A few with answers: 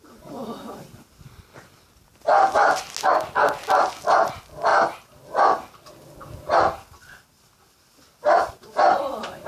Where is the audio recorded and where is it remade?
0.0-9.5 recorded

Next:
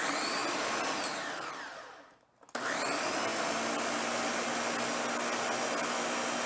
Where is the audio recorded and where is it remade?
0.0-6.5 recorded

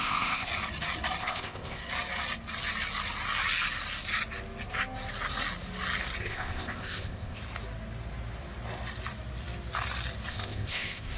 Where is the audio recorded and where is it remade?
0.0-0.5 remade; 0.5-1.2 recorded; 1.2-1.8 remade; 1.8-6.2 recorded; 6.2-7.4 remade; 7.4-10.3 recorded; 10.3-11.2 remade

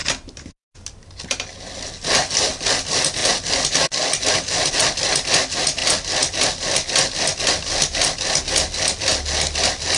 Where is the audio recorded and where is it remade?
0.0-10.0 recorded